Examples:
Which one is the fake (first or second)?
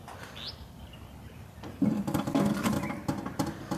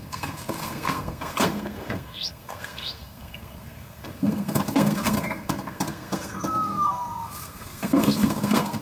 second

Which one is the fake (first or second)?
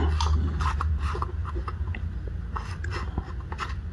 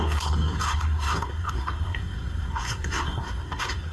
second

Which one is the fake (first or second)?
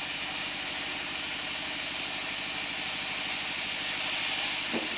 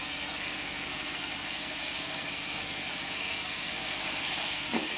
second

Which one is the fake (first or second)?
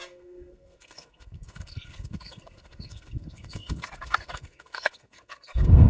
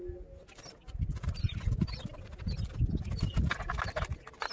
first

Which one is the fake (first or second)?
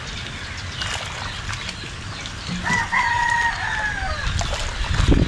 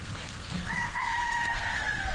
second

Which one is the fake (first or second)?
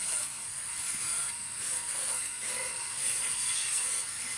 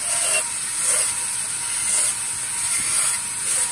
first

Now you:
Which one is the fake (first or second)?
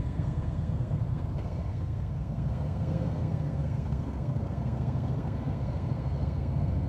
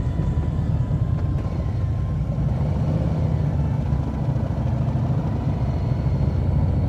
first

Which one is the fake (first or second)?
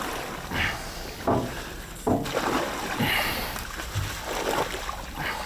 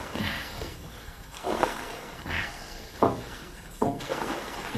second